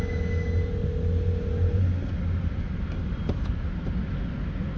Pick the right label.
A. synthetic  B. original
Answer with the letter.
B